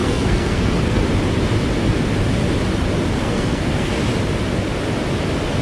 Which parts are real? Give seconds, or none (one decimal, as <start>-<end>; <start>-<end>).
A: 1.0-3.2; 3.9-5.6